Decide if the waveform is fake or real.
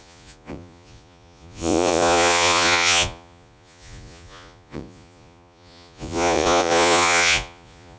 fake